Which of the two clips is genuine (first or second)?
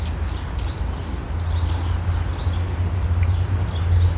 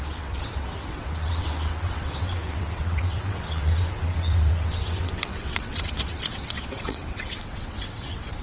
first